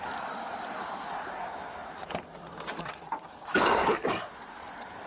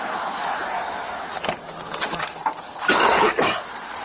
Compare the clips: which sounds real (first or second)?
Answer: second